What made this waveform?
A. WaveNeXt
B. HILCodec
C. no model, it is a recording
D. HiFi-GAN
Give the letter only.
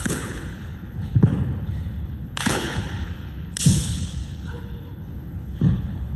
B